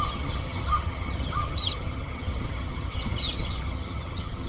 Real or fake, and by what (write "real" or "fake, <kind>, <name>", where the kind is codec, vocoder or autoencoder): fake, vocoder, HiFi-GAN